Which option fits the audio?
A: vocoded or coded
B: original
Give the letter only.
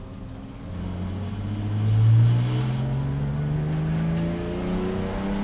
B